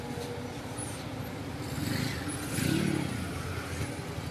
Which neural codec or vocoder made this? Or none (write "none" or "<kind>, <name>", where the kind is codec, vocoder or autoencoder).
none